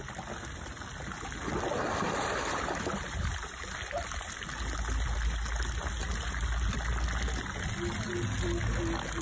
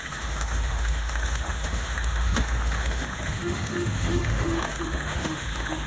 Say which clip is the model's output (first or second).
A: second